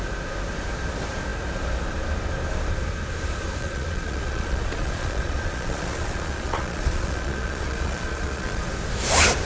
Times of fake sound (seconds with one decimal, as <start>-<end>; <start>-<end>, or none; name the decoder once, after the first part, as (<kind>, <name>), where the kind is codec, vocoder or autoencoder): 3.6-8.7 (vocoder, Vocos)